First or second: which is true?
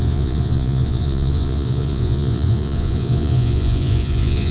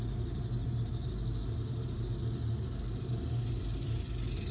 second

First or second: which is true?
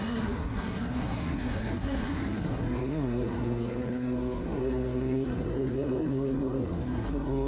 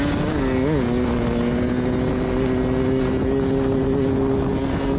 second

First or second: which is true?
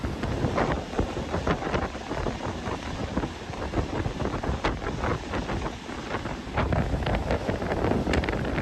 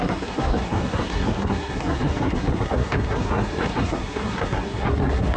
first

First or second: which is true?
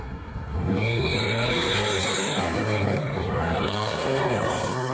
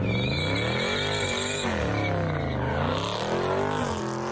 second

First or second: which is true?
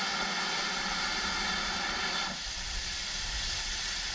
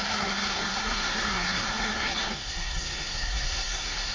first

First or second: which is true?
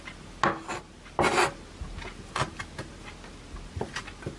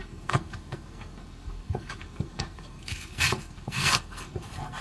first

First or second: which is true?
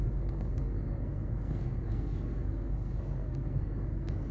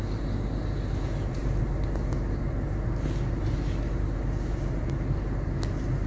second